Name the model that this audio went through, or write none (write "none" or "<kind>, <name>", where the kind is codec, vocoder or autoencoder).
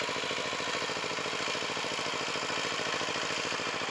none